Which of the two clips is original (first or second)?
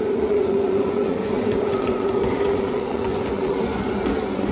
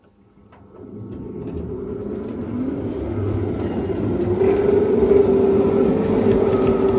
second